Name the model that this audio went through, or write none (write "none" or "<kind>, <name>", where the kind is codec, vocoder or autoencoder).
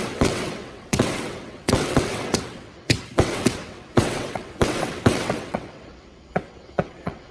vocoder, WaveNeXt